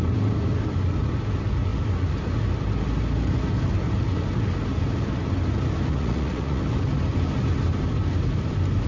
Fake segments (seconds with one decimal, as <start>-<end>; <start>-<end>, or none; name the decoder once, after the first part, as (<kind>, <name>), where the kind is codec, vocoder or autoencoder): 5.9-6.6 (vocoder, Vocos)